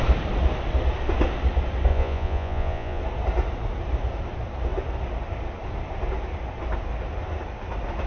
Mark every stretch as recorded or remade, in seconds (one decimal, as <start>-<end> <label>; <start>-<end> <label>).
0.0-1.9 recorded; 1.9-3.0 remade; 3.0-8.1 recorded